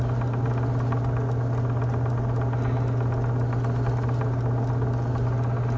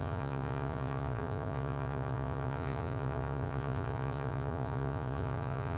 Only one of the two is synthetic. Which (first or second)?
second